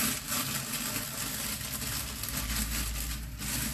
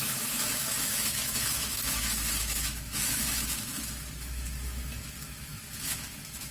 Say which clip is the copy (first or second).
second